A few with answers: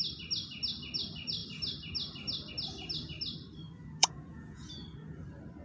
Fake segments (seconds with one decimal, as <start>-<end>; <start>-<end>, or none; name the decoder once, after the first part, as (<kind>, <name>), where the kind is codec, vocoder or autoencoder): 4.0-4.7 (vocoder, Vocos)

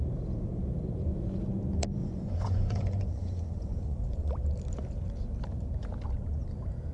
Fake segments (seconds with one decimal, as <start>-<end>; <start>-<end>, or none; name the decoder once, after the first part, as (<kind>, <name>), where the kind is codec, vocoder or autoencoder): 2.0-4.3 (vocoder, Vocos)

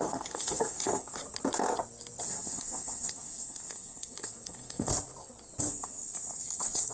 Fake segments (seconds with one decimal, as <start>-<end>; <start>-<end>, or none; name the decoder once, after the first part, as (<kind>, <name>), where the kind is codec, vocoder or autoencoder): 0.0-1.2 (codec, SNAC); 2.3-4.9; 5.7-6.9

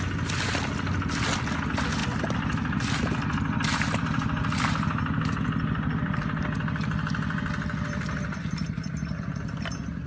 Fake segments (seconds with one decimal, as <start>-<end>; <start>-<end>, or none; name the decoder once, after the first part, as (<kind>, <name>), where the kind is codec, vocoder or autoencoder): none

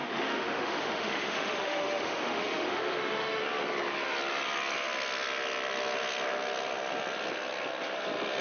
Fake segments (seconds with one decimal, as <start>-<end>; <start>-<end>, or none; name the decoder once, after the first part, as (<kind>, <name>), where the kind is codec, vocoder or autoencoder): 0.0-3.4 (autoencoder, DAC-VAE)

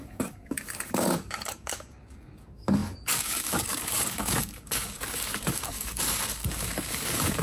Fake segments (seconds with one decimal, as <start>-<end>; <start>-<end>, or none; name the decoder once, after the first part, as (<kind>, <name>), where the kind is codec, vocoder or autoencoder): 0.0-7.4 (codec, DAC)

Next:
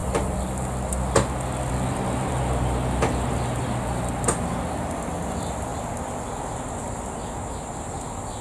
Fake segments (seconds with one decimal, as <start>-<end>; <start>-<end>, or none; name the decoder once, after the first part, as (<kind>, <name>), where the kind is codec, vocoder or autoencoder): none